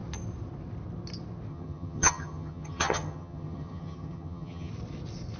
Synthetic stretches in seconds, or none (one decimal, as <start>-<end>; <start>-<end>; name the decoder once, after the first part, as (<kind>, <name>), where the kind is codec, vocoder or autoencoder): 1.5-4.7 (vocoder, HiFi-GAN)